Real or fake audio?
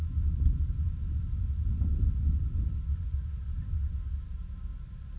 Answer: real